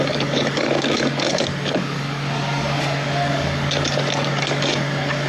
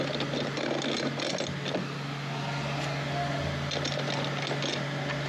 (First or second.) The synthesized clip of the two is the first